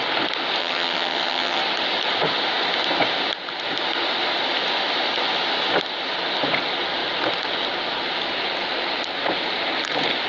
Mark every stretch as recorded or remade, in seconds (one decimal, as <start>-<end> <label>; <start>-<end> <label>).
0.0-0.6 recorded; 0.6-1.6 remade; 1.6-10.3 recorded